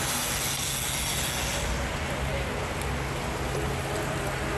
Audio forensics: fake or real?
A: real